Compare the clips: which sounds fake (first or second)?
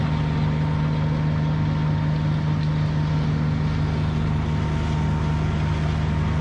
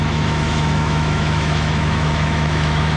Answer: second